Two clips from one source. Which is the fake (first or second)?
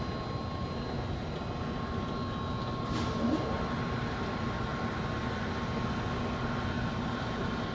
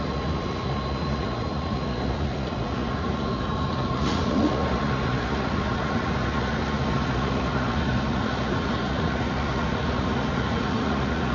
second